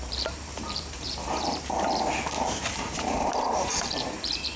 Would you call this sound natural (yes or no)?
no